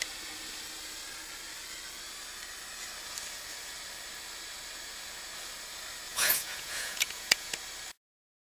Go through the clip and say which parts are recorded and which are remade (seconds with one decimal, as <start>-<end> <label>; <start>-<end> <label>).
0.0-6.1 recorded; 6.1-7.5 remade; 7.5-8.5 recorded